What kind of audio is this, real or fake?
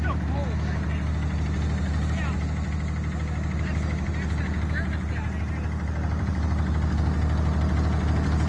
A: real